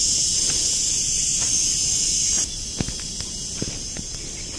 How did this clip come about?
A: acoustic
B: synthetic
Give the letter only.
A